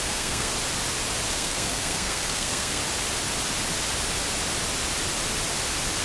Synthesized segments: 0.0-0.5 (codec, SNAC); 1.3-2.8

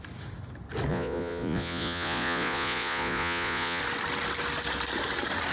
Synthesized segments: 0.9-3.8 (vocoder, Vocos)

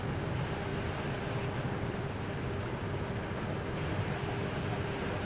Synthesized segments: none